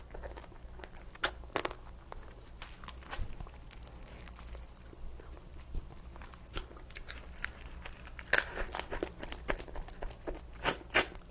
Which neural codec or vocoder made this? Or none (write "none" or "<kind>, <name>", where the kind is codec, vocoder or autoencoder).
none